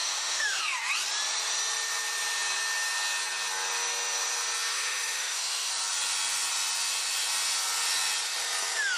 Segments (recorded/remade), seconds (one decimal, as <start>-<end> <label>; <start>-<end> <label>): 0.0-0.6 remade; 0.6-4.7 recorded; 4.7-5.7 remade; 5.7-9.0 recorded